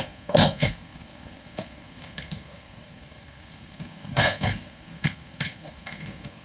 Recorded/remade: remade